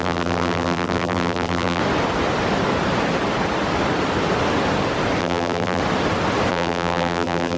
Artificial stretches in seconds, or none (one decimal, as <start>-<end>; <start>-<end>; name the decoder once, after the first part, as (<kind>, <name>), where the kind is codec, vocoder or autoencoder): 0.0-1.8 (vocoder, BigVGAN v2); 5.2-5.8; 6.5-7.6